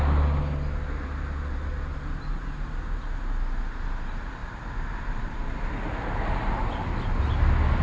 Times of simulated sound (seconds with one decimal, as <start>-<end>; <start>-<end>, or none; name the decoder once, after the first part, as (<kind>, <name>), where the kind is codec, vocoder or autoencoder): none